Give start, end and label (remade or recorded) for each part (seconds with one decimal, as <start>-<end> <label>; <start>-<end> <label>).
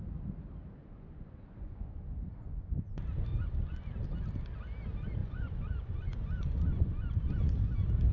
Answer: 0.0-0.8 recorded; 0.8-2.6 remade; 2.6-3.3 recorded; 3.3-3.8 remade; 3.8-5.2 recorded; 5.2-7.6 remade; 7.6-8.1 recorded